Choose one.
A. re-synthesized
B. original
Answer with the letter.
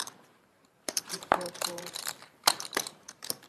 A